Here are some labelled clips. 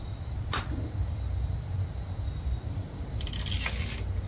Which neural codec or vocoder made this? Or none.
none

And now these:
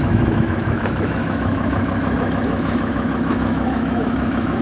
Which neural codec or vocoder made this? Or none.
autoencoder, DAC-VAE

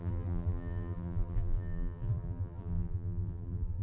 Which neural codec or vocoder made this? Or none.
vocoder, BigVGAN v2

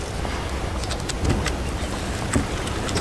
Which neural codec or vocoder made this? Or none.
none